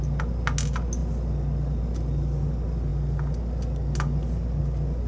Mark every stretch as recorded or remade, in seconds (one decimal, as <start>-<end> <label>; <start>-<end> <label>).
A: 0.0-5.1 recorded